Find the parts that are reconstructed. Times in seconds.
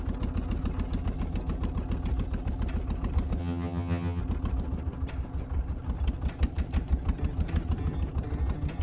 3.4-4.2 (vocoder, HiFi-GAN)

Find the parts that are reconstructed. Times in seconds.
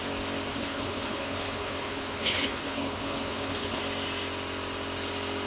0.5-3.8 (codec, HILCodec)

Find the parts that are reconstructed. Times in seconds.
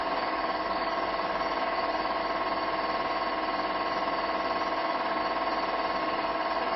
0.0-2.2 (codec, DAC); 4.8-5.2; 6.0-6.8